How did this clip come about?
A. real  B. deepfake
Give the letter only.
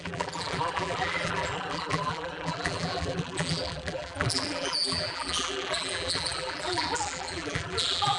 B